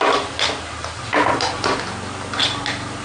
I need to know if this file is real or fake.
real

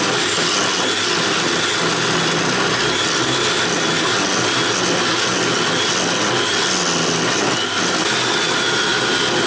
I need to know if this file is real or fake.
real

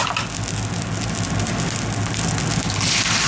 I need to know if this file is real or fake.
real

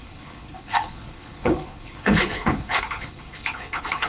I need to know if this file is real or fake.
fake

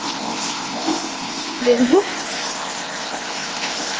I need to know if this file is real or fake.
fake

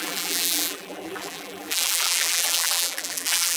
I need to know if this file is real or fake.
fake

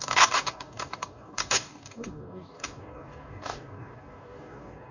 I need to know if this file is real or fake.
fake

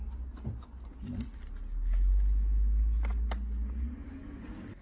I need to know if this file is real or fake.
real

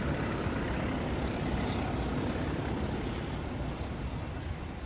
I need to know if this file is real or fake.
real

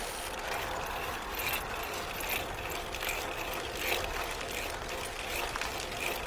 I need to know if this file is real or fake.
real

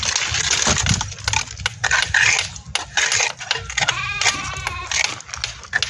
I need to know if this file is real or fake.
real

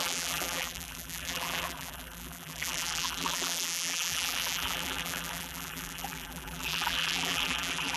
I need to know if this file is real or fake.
fake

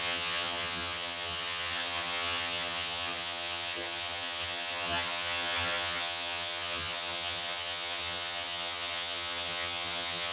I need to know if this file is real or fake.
fake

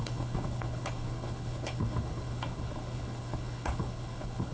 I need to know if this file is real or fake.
fake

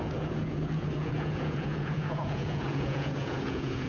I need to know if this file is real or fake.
fake